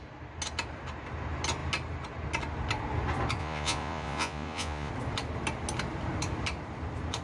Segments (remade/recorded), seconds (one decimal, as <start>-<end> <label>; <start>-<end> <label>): 0.0-3.4 recorded; 3.4-4.9 remade; 4.9-7.2 recorded